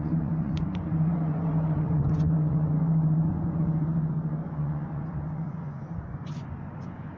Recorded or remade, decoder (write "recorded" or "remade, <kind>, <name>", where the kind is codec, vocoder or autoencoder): remade, vocoder, Vocos